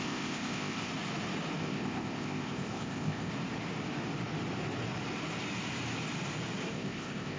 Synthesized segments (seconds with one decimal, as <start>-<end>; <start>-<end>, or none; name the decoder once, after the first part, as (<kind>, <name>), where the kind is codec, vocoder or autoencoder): 0.0-0.9 (codec, ZipCodec); 1.6-3.3; 6.7-7.4